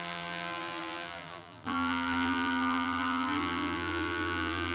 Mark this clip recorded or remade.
remade